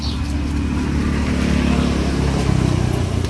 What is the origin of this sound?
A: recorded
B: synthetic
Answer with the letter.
A